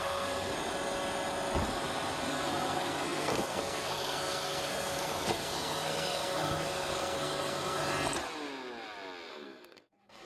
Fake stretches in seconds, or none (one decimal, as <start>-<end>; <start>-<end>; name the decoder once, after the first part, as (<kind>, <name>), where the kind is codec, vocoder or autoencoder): 0.0-0.5 (codec, SNAC); 2.3-7.8; 9.3-10.3